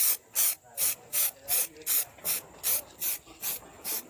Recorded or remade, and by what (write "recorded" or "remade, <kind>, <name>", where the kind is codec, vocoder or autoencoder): recorded